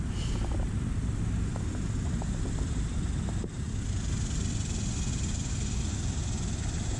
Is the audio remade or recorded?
recorded